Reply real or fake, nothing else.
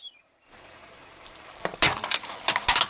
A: fake